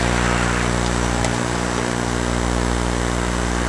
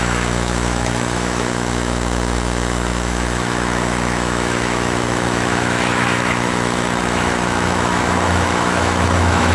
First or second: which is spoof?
second